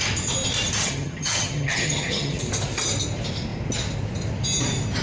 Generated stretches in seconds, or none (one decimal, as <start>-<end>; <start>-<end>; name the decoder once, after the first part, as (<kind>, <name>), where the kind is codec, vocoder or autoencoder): 0.8-2.4 (vocoder, HiFi-GAN)

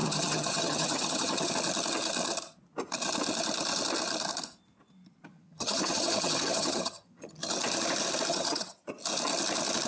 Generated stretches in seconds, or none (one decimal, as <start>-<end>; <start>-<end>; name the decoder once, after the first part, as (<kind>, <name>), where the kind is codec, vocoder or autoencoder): 0.0-1.5 (vocoder, HiFi-GAN); 5.3-7.4; 8.3-8.9

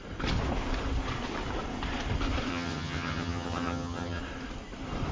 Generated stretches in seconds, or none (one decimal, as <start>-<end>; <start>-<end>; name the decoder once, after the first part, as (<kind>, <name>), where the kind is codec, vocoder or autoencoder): 2.5-4.2 (vocoder, HiFi-GAN)

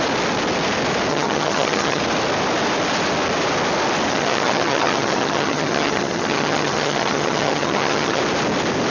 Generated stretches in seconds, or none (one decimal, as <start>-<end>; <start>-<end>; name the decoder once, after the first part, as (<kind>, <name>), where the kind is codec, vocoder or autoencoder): 1.1-2.0 (vocoder, HiFi-GAN); 4.1-8.2

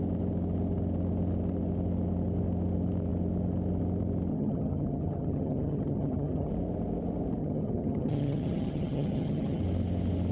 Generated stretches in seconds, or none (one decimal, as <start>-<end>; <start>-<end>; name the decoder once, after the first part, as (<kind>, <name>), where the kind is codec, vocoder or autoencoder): 4.3-6.5 (vocoder, HiFi-GAN); 7.4-9.6

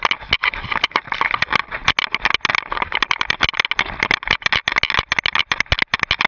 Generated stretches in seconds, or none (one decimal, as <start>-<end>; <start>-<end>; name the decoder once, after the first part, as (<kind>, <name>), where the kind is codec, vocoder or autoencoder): none

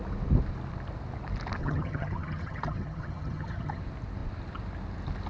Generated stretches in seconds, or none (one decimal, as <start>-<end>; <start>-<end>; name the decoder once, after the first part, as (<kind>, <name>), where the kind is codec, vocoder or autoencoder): 1.6-3.8 (vocoder, HiFi-GAN)

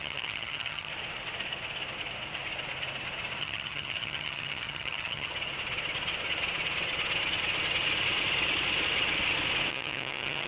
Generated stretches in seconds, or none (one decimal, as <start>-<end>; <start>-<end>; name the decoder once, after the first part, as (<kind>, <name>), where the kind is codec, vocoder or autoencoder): 0.0-0.9 (vocoder, HiFi-GAN); 3.4-5.3; 9.7-10.5